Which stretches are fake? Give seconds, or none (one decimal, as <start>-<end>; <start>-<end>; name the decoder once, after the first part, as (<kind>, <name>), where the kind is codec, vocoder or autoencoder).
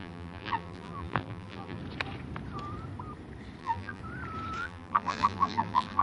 0.0-1.8 (vocoder, BigVGAN v2); 3.6-4.0; 4.6-6.0